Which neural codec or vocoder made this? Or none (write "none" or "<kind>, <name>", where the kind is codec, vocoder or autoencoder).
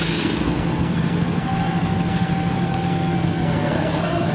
codec, SNAC